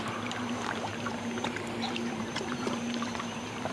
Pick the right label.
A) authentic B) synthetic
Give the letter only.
B